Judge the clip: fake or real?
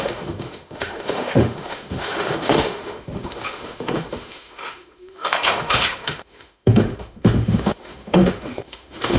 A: fake